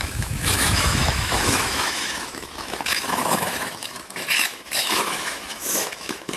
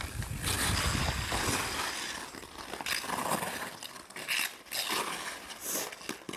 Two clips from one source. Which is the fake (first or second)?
first